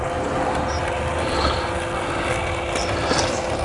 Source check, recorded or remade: recorded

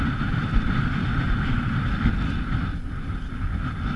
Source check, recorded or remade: recorded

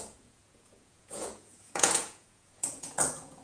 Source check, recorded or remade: remade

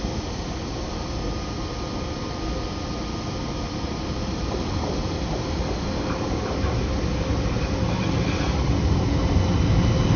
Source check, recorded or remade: recorded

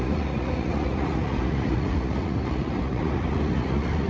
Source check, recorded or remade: remade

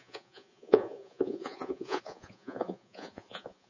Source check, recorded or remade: remade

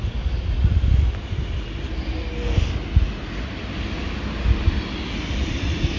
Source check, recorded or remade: recorded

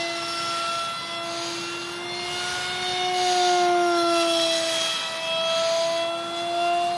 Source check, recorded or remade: recorded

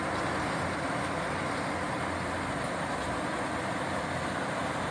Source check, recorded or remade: recorded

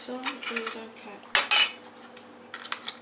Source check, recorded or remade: recorded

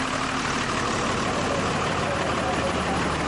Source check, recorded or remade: recorded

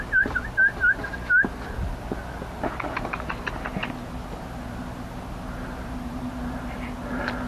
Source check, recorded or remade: recorded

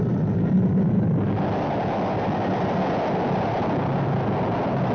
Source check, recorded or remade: recorded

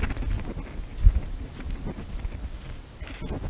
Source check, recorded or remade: recorded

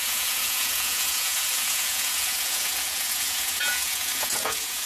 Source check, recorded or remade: remade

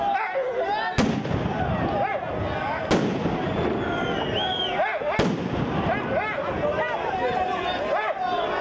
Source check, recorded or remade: recorded